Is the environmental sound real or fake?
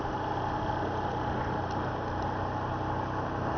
real